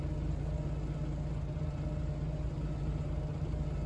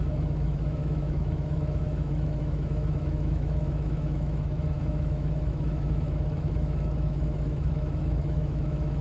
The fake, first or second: second